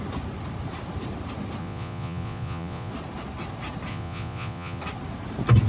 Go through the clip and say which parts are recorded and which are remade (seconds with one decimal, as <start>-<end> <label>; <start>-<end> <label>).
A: 0.0-1.6 recorded; 1.6-2.9 remade; 2.9-3.9 recorded; 3.9-4.8 remade; 4.8-5.7 recorded